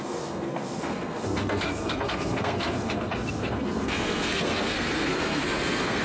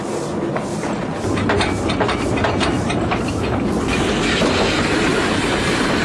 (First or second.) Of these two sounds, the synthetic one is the first